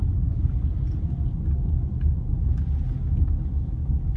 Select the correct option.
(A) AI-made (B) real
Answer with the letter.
B